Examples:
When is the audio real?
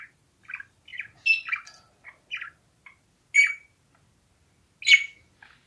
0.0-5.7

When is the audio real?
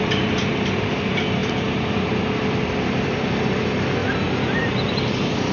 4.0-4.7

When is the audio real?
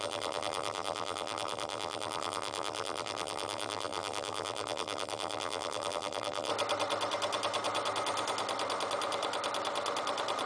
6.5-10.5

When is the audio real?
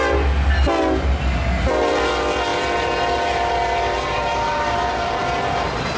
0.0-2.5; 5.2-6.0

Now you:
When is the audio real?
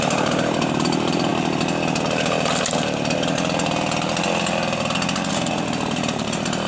1.3-5.3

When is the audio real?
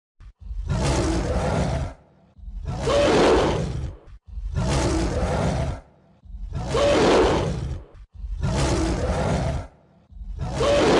0.0-11.0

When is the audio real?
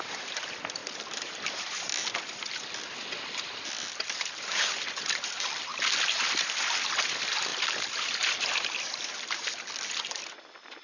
none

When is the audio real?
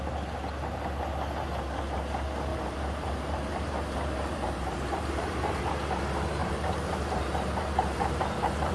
0.0-2.5; 5.6-6.4